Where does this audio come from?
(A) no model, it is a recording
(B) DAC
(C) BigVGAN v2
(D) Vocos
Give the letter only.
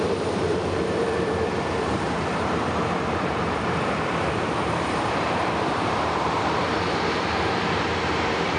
C